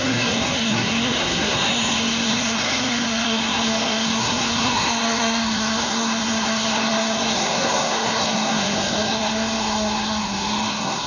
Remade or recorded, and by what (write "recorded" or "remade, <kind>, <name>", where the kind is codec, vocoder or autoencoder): remade, codec, SNAC